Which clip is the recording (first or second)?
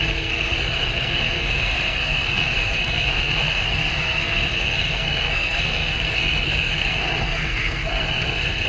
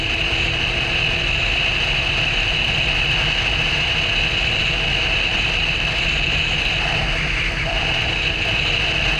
second